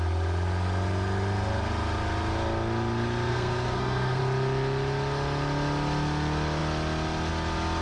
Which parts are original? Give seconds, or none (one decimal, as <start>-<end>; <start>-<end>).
0.0-3.3; 4.2-7.8